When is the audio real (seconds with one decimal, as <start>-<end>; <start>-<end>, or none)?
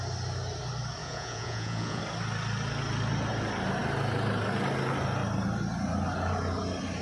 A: 0.0-1.0; 2.0-7.0